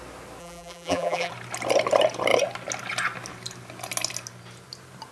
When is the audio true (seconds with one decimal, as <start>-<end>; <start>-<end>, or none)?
0.0-0.4; 1.3-5.1